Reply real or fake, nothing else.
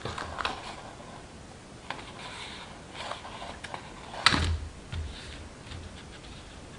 real